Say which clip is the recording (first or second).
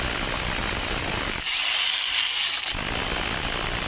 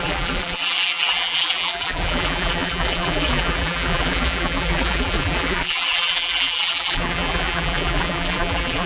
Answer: first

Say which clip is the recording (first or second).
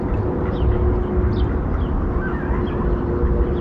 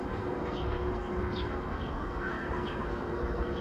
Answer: first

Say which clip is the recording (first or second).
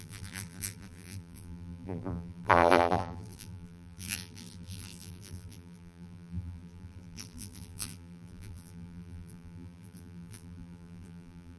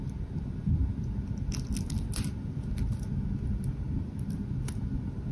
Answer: second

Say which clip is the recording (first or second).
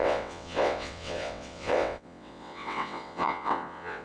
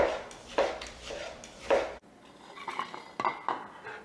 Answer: second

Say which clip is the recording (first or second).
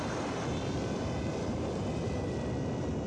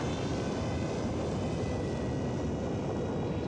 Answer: second